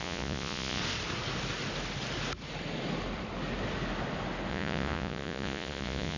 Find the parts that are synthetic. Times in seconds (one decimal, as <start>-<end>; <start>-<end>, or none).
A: 0.0-0.8; 4.5-6.2